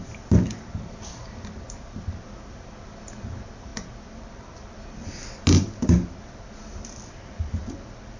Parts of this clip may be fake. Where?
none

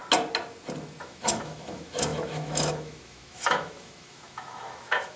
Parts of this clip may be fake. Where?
1.0-5.2 (autoencoder, DAC-VAE)

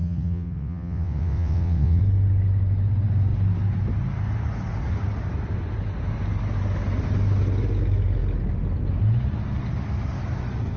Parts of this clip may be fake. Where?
0.0-2.0 (vocoder, WaveNeXt)

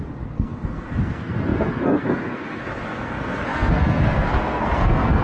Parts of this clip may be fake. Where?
0.0-5.2 (codec, SNAC)

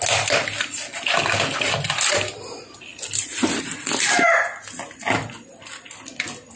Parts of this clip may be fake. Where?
none

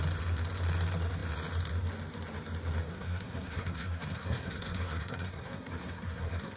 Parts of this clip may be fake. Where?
2.8-6.6 (codec, SNAC)